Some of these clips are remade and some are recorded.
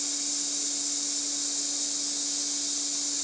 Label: recorded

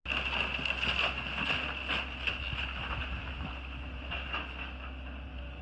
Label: recorded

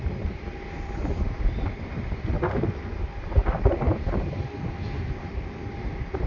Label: remade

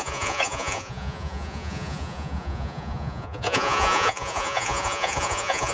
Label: remade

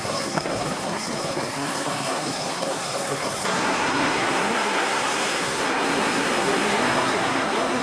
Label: remade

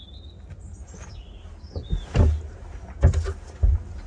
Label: recorded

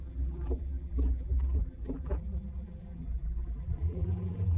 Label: remade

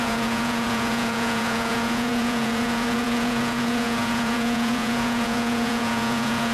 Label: remade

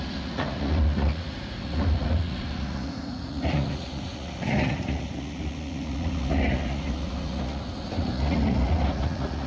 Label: remade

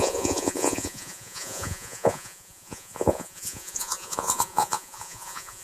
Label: remade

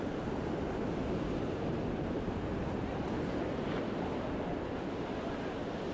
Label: recorded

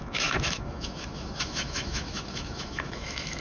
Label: remade